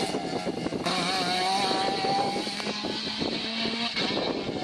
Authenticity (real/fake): real